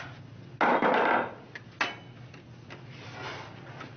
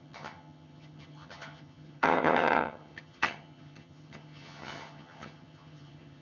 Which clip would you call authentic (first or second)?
first